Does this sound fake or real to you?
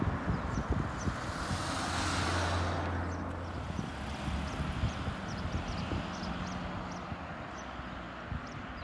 real